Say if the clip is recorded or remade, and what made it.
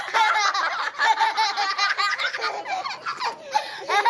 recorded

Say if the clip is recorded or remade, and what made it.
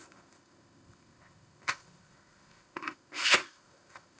remade, codec, ZipCodec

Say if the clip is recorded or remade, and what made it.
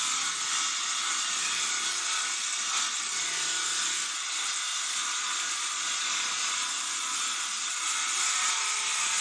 recorded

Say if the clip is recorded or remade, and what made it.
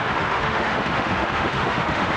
remade, autoencoder, DAC-VAE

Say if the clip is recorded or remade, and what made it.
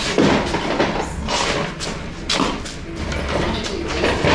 recorded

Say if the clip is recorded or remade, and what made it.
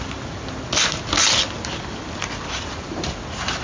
recorded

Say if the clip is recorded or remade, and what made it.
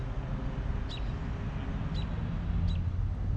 recorded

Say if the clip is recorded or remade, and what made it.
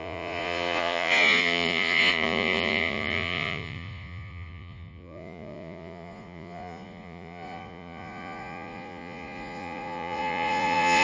remade, vocoder, Vocos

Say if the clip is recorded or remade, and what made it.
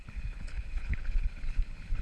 remade, codec, HILCodec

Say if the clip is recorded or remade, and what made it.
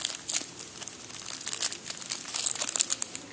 recorded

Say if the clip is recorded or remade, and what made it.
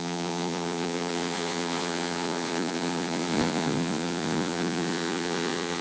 remade, vocoder, Vocos